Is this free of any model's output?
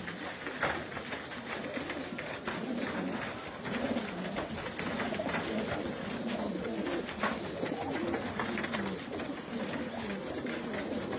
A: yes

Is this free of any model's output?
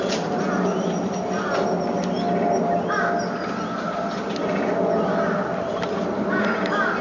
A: yes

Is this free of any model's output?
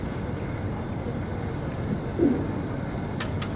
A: yes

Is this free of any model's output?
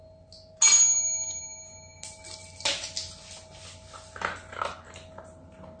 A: yes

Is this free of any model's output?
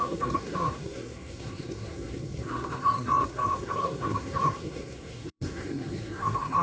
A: no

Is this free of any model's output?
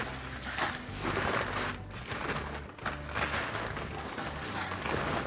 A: yes